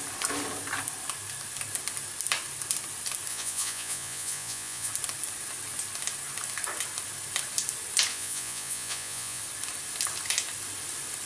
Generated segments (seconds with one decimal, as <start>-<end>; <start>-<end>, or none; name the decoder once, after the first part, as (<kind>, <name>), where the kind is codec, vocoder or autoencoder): 3.3-4.9 (vocoder, Vocos); 8.1-9.4